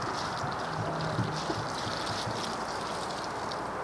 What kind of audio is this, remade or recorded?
recorded